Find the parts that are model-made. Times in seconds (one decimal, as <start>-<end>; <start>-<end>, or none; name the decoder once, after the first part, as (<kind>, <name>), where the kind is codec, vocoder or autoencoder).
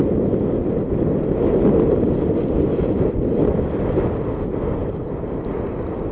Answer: none